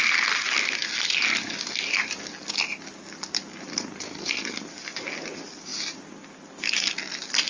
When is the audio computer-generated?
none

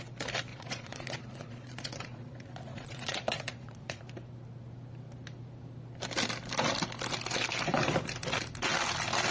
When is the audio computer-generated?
0.5-4.0 (vocoder, Vocos)